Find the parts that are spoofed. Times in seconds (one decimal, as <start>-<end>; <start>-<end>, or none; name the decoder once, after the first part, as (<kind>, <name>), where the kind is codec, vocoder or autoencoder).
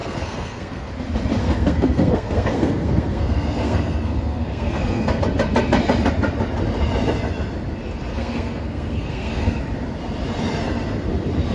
0.0-0.9 (codec, SNAC); 1.4-5.2; 8.1-9.6